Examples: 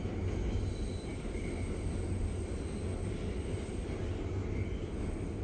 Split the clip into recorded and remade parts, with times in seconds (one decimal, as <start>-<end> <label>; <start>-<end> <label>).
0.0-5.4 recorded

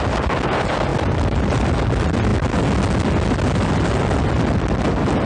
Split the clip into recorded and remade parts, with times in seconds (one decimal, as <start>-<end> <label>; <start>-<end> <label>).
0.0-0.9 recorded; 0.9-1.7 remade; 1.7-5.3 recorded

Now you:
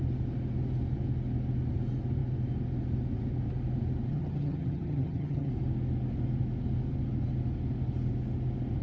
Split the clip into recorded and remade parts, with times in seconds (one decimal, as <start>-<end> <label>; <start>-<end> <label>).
0.0-4.1 recorded; 4.1-5.5 remade; 5.5-8.8 recorded

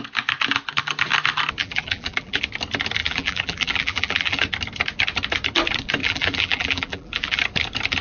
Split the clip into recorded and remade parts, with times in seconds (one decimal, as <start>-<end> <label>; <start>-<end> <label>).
0.0-1.6 recorded; 1.6-2.4 remade; 2.4-3.0 recorded; 3.0-4.4 remade; 4.4-6.0 recorded; 6.0-7.4 remade; 7.4-8.0 recorded

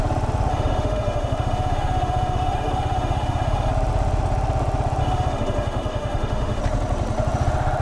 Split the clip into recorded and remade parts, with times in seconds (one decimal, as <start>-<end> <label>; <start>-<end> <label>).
0.0-0.5 recorded; 0.5-3.7 remade; 3.7-5.0 recorded; 5.0-6.6 remade; 6.6-7.8 recorded

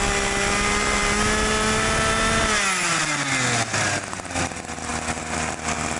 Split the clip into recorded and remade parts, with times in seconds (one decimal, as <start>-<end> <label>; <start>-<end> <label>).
0.0-6.0 recorded

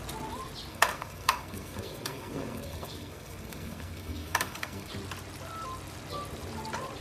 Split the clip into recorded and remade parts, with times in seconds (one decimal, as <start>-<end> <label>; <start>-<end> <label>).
0.0-0.7 recorded; 0.7-4.9 remade; 4.9-7.0 recorded

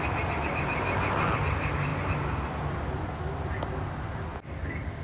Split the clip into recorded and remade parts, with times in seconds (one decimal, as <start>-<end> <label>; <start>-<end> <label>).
0.0-5.0 recorded